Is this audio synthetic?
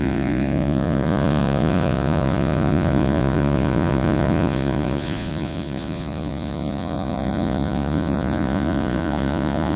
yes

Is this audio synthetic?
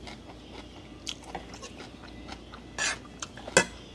no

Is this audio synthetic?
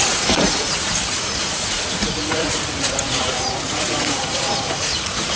yes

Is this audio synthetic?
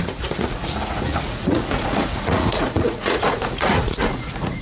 yes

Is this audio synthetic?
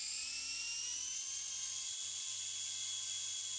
no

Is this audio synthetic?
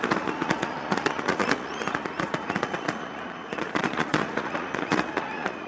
yes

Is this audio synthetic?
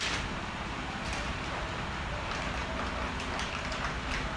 no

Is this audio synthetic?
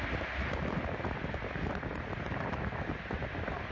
no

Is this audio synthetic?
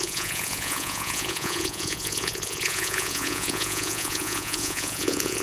yes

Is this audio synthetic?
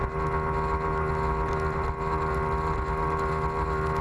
no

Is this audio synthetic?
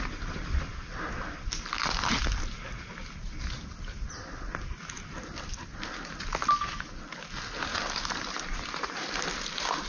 no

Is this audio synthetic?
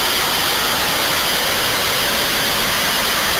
no